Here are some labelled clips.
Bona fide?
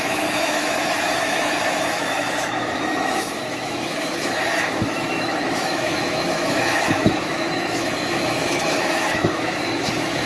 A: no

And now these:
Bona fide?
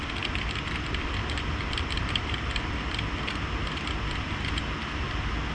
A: yes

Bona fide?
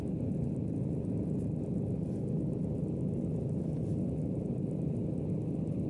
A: yes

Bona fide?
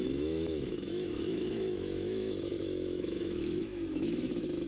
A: no